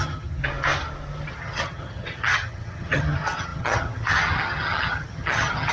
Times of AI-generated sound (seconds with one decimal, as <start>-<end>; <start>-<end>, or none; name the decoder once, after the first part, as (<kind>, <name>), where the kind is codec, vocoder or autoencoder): 0.0-0.4 (vocoder, HiFi-GAN); 1.3-5.7